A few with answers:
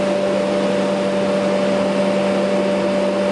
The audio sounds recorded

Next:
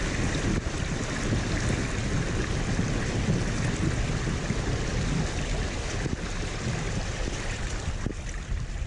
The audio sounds recorded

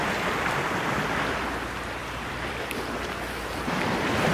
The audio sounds recorded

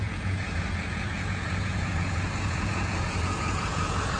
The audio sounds remade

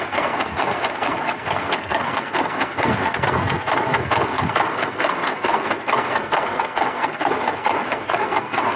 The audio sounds remade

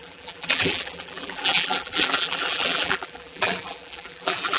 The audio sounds remade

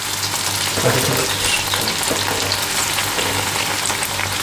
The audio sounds recorded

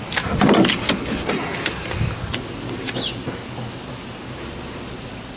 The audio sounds recorded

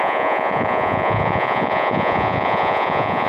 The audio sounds remade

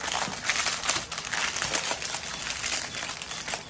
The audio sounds recorded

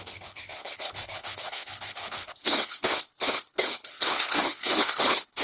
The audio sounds remade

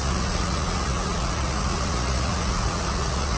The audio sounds remade